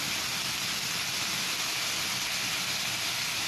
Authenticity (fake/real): real